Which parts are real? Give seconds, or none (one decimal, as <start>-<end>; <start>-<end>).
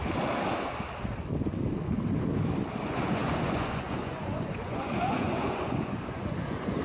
0.0-2.8